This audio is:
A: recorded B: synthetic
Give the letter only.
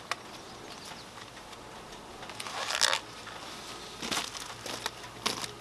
A